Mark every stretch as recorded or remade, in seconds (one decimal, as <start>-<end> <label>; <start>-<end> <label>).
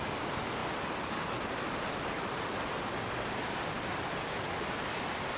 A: 0.0-5.4 recorded